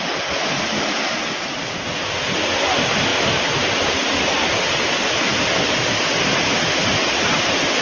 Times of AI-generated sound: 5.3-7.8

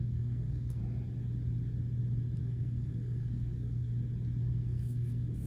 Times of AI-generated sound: 0.0-0.8; 2.4-3.9; 4.5-5.5

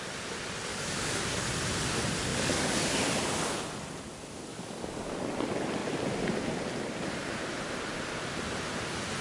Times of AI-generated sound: 0.7-1.4; 2.3-3.5; 4.5-5.1

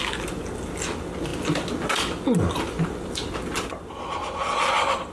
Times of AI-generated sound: none

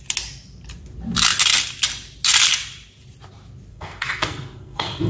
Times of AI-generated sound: 3.7-5.1

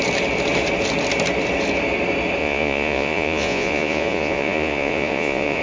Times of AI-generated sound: 2.4-5.6

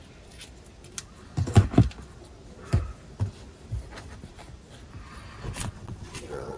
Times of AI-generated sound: 5.6-6.6

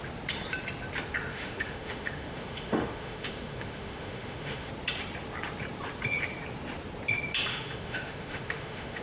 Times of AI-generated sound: 1.3-4.7; 7.5-9.0